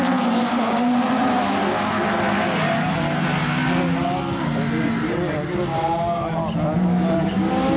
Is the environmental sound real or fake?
real